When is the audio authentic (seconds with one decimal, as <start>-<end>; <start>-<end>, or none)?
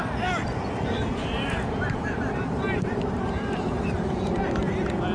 0.0-1.1; 4.2-5.1